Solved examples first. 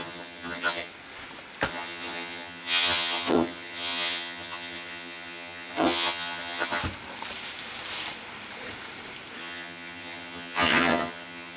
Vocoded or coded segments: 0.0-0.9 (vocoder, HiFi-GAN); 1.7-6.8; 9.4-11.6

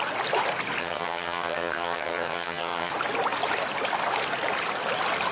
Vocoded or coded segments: 0.8-2.9 (vocoder, HiFi-GAN)

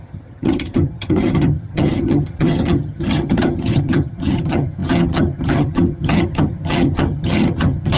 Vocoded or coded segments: 0.0-8.0 (vocoder, HiFi-GAN)

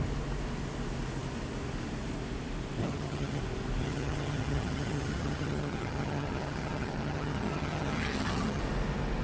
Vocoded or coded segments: 2.8-3.4 (vocoder, HiFi-GAN); 3.8-8.6

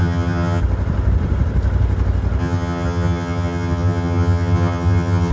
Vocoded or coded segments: 0.0-0.6 (vocoder, HiFi-GAN); 2.4-5.3